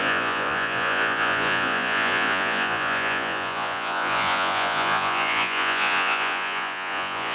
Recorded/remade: remade